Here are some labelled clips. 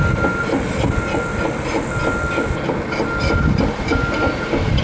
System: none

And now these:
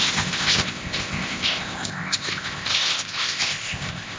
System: codec, ZipCodec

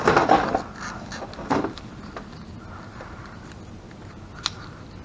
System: none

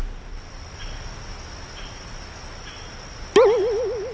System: none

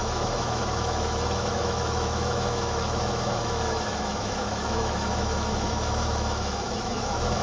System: autoencoder, DAC-VAE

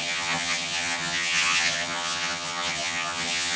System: vocoder, HiFi-GAN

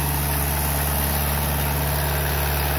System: none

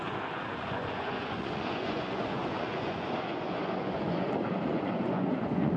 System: vocoder, Vocos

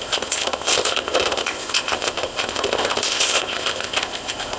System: codec, ZipCodec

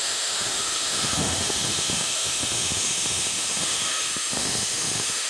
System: autoencoder, DAC-VAE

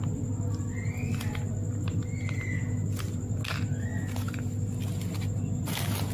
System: none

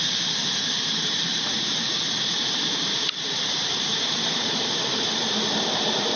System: vocoder, BigVGAN v2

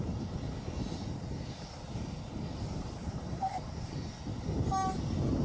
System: none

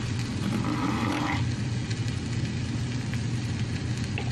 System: none